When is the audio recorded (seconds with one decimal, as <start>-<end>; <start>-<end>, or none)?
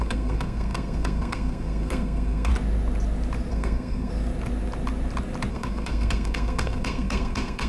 2.5-3.5; 4.1-5.5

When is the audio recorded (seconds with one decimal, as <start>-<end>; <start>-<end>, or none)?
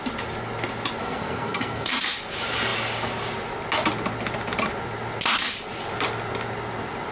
0.0-1.0; 1.9-7.1